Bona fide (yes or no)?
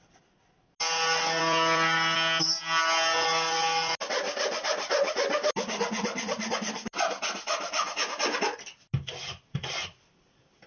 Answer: yes